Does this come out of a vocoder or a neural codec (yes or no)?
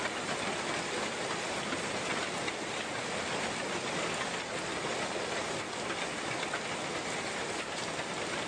no